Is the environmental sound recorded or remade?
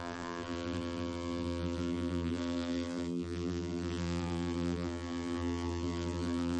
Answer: remade